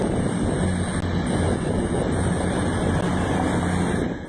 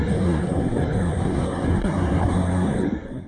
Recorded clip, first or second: first